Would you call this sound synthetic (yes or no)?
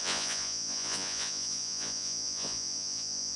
yes